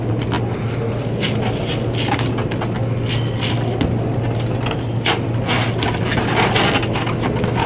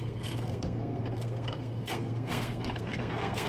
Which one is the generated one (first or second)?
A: second